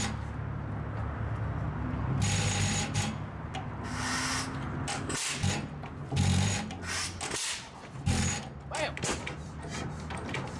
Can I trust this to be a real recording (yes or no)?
yes